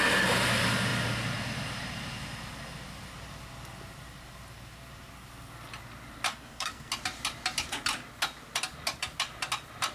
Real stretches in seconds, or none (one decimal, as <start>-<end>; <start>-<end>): 0.0-6.3; 6.9-9.9